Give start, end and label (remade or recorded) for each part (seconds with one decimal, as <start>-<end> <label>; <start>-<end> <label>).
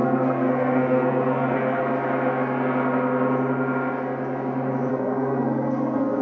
0.0-1.8 remade; 1.8-4.9 recorded; 4.9-6.2 remade